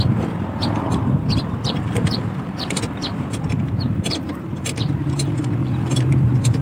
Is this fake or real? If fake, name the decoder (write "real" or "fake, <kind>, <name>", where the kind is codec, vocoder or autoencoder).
fake, vocoder, BigVGAN v2